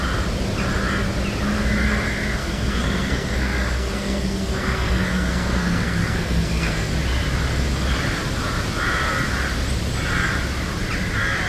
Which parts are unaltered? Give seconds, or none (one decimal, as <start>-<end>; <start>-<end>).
0.0-2.4; 6.9-11.5